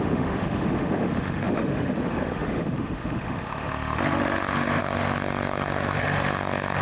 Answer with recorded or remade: remade